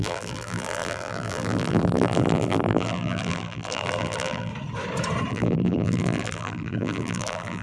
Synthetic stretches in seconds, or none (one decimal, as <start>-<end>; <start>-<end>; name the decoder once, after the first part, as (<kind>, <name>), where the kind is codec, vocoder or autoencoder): 0.0-4.5 (vocoder, BigVGAN v2); 5.3-7.6